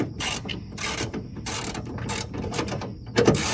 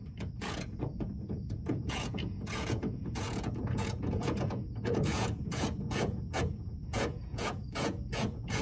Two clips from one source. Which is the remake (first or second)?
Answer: second